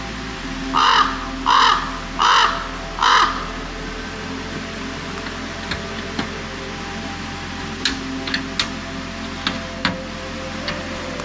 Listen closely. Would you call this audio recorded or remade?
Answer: recorded